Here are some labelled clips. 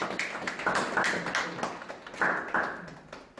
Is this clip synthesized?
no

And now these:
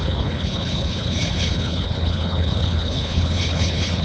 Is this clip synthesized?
yes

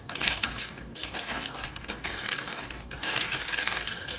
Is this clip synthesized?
yes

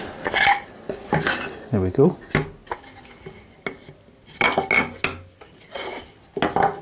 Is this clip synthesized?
no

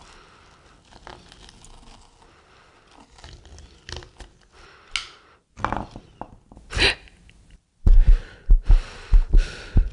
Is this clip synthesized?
no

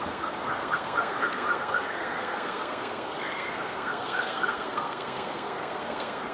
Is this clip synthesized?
yes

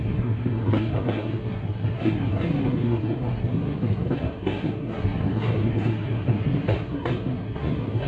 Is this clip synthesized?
yes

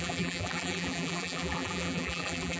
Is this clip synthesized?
yes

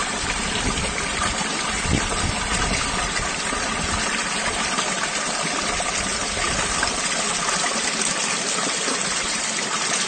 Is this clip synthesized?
no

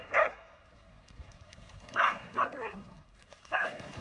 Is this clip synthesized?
yes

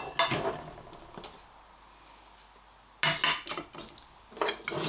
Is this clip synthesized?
no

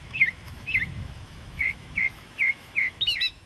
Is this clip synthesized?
yes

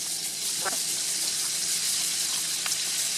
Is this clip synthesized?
no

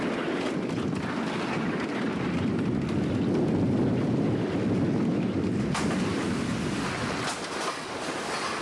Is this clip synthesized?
no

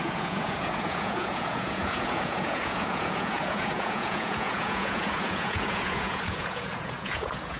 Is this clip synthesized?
yes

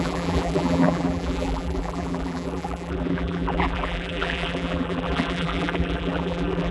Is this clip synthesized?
yes